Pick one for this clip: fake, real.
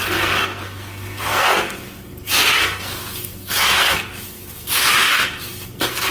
fake